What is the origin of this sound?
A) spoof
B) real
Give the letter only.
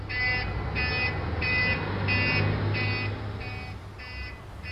B